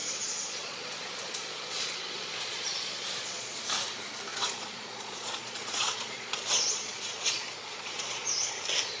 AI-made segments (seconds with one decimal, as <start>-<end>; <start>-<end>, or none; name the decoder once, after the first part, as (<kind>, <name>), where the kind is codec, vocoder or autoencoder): 0.0-3.6 (vocoder, Vocos); 4.3-8.5

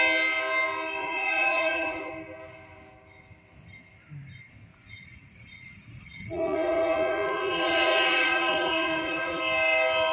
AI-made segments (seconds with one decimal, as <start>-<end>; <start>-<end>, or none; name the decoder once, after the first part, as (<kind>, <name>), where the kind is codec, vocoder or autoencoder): 1.0-2.1 (vocoder, Vocos); 4.7-9.4